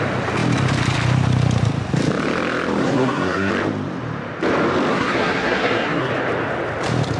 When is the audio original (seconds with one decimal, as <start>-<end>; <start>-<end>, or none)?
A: 0.0-2.8; 3.5-4.9; 6.1-7.2